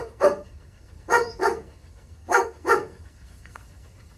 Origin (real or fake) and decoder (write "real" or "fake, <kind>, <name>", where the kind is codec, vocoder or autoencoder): fake, codec, SNAC